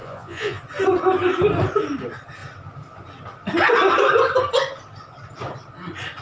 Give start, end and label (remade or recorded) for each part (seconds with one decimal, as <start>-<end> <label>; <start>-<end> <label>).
0.0-0.6 remade; 0.6-6.2 recorded